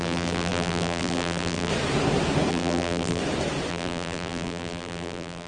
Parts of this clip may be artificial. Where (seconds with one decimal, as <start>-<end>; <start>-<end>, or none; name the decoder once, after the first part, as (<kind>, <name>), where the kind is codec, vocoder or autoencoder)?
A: 0.0-1.7 (vocoder, BigVGAN v2); 2.5-3.2; 3.7-5.5